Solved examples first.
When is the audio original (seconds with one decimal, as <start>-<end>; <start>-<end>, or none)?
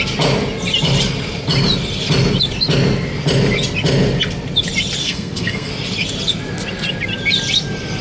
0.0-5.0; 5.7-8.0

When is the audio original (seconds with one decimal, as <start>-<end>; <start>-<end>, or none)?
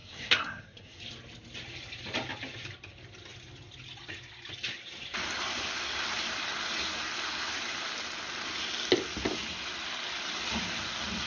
1.0-11.3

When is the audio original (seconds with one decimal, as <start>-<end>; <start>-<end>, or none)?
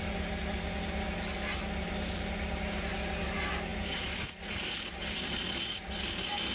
0.0-6.5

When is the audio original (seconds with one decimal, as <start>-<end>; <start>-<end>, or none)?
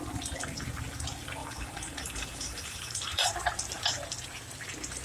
0.0-1.4; 3.3-5.0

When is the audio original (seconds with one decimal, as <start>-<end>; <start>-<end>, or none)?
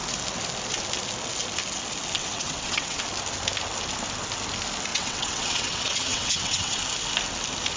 0.0-2.2; 3.0-4.9; 6.8-7.8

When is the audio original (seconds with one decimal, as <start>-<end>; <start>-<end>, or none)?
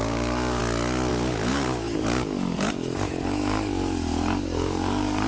0.6-1.1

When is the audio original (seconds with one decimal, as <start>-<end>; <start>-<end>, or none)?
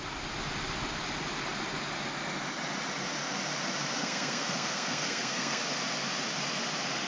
0.0-4.0; 5.6-7.1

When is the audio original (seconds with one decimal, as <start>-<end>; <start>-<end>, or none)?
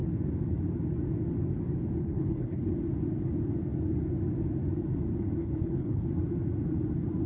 0.0-2.0; 2.7-5.4; 6.1-7.3